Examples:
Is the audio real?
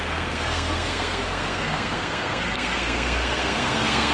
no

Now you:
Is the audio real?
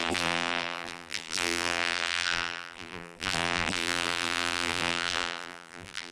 no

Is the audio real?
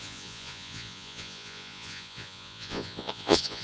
no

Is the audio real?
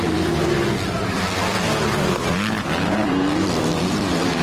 yes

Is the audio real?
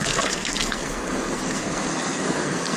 no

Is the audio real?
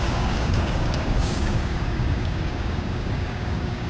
no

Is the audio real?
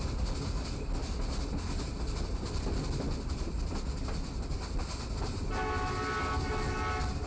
yes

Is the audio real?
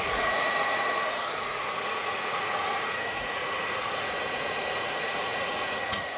no